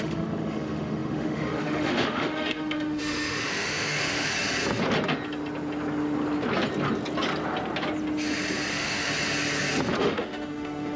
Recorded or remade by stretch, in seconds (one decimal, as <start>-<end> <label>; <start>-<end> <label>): 0.0-4.3 remade; 4.3-8.7 recorded; 8.7-9.1 remade; 9.1-10.0 recorded; 10.0-11.0 remade